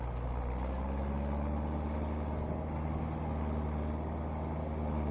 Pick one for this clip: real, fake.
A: real